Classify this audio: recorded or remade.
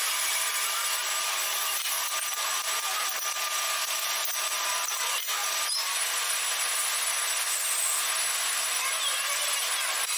recorded